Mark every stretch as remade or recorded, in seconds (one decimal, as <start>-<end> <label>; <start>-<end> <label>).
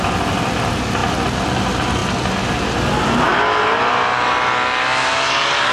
0.0-5.7 recorded